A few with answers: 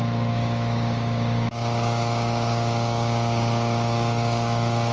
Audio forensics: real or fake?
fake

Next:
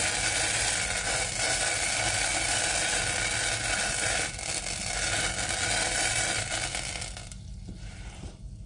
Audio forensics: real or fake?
real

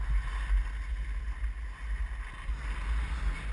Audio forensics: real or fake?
real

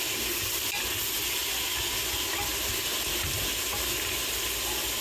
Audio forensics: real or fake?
real